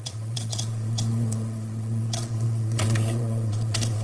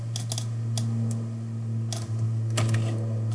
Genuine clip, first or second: second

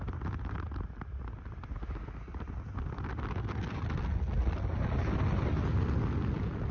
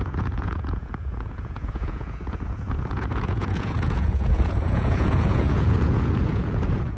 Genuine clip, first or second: first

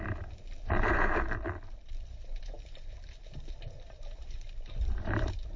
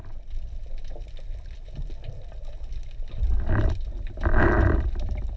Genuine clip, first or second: second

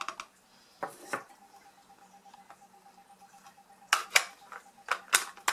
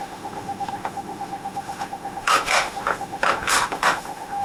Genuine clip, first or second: first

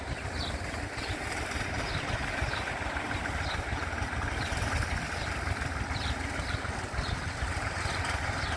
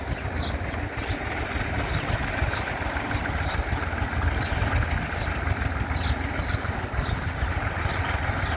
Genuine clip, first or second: second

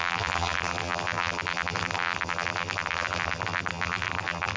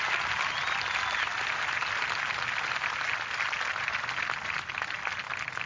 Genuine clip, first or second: second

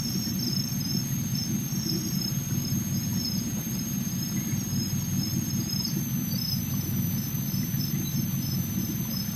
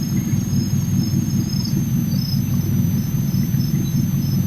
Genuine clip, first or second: second